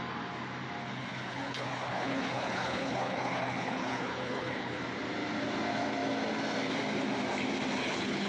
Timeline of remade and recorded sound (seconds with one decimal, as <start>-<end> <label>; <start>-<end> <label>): 0.0-0.8 recorded; 0.8-4.8 remade; 4.8-7.8 recorded; 7.8-8.3 remade